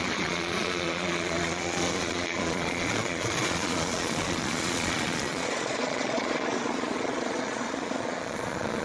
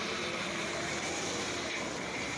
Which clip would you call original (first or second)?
second